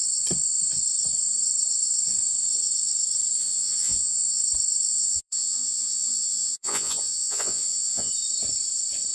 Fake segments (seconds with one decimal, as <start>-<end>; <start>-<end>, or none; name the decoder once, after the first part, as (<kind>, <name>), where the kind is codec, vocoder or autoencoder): 3.4-4.4 (vocoder, Vocos); 4.9-8.1

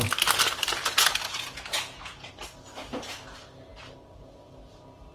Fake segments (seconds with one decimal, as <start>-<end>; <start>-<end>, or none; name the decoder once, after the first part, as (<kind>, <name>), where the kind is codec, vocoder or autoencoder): 0.8-2.3 (vocoder, Vocos)

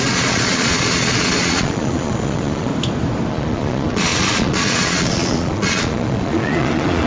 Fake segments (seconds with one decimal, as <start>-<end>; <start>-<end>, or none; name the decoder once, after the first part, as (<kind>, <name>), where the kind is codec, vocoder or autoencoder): 0.0-2.7 (vocoder, Vocos); 3.3-7.1

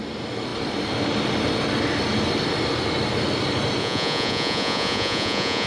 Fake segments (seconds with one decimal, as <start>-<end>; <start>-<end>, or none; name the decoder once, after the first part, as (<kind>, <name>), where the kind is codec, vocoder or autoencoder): 3.8-5.7 (vocoder, Vocos)

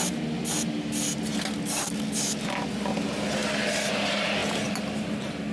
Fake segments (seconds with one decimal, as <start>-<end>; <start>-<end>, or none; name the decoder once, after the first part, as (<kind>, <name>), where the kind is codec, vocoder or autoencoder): none

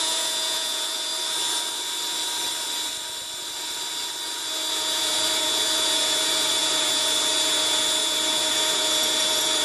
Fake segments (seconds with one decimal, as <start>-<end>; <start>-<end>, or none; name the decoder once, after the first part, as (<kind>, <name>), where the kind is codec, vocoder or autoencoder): 0.0-1.1 (vocoder, Vocos); 4.7-9.6